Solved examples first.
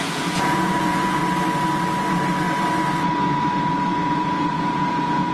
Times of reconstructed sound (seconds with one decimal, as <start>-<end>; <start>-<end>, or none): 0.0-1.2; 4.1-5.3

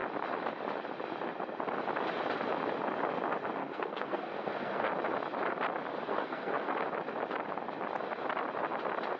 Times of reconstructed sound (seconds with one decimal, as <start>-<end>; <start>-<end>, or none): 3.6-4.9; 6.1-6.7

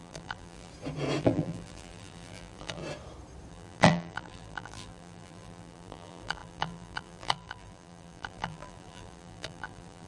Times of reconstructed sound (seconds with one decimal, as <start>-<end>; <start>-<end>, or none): 0.0-0.7; 1.2-2.8; 3.5-10.1

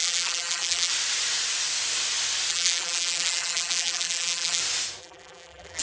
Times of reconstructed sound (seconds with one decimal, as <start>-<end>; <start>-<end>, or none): 0.0-0.9; 2.5-4.6; 5.0-5.8